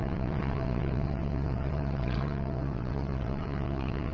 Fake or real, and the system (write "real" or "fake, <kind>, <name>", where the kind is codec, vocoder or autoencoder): fake, vocoder, WaveNeXt